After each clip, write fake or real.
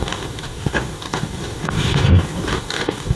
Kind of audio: fake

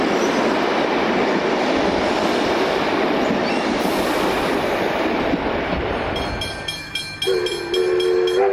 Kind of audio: real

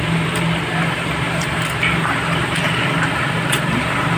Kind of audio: fake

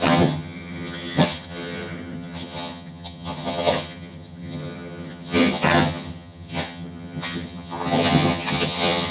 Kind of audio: fake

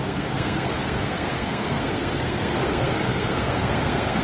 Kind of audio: fake